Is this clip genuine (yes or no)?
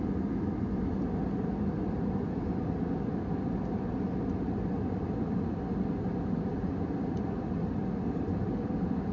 yes